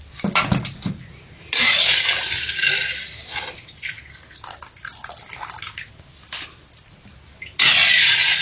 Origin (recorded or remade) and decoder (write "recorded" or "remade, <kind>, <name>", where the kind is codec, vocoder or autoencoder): recorded